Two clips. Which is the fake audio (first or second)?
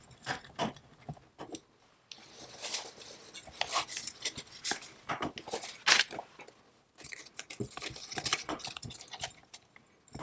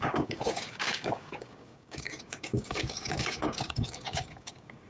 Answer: second